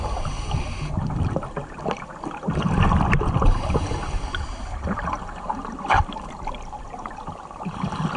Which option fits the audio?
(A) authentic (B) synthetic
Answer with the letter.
A